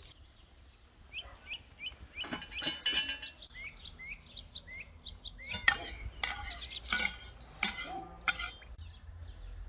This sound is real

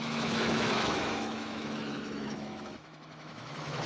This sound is fake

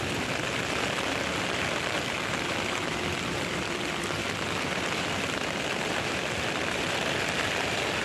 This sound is fake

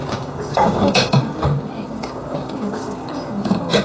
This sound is fake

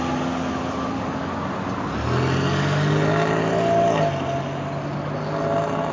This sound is real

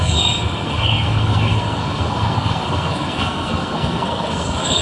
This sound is fake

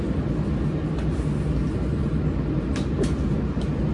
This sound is real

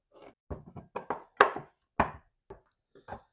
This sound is real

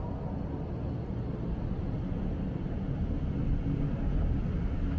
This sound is real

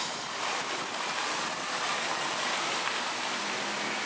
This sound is real